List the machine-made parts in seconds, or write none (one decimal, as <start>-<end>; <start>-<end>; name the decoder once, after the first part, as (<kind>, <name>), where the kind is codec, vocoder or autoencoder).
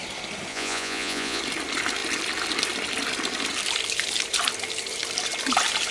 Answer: 0.5-1.4 (vocoder, Vocos)